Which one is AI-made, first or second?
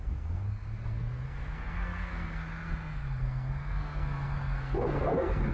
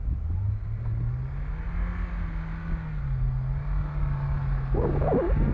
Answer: first